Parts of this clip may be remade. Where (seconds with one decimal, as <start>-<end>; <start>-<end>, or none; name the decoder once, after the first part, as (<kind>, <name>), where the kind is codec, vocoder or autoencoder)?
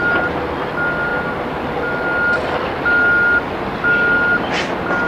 none